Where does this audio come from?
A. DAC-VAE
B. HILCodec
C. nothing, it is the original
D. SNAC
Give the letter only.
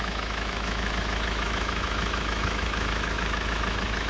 A